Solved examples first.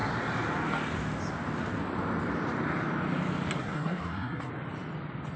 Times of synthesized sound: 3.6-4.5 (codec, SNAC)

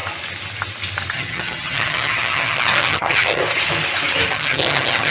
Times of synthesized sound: 1.1-3.4 (vocoder, HiFi-GAN); 4.3-5.1

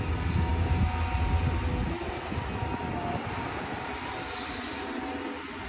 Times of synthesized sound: none

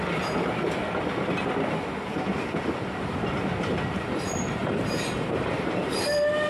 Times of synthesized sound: 4.6-6.1 (vocoder, BigVGAN v2)